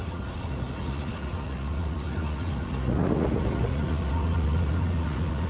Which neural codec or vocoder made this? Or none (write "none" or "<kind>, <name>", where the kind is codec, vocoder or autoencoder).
vocoder, Vocos